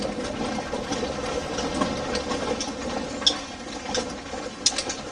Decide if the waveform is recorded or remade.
recorded